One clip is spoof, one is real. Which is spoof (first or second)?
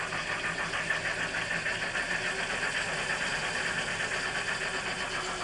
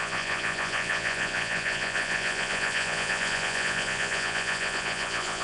second